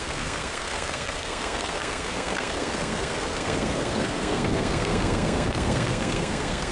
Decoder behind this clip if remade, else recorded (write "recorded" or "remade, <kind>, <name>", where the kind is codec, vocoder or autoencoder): remade, codec, SNAC